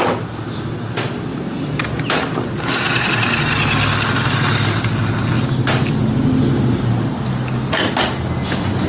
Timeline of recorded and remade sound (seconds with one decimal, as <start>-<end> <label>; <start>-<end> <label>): 0.0-1.3 recorded; 1.3-3.1 remade; 3.1-8.9 recorded